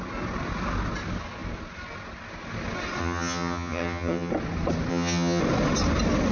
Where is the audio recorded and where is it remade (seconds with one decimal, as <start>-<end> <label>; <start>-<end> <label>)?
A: 0.0-3.0 recorded; 3.0-4.3 remade; 4.3-4.9 recorded; 4.9-5.4 remade; 5.4-6.3 recorded